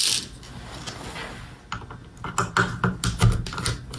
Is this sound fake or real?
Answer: real